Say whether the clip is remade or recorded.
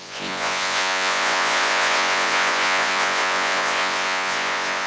remade